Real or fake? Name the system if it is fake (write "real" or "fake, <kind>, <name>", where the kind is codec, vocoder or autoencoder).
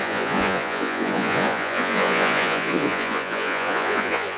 fake, vocoder, Vocos